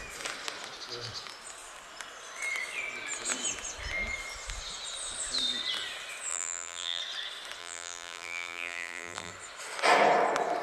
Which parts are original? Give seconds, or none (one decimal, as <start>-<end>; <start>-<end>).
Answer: 0.0-6.3; 7.0-7.6; 9.3-10.6